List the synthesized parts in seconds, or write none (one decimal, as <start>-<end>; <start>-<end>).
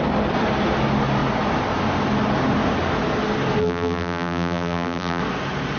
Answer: 3.6-5.2